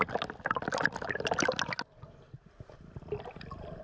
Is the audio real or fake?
real